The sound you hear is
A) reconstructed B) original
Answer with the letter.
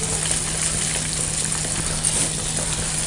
B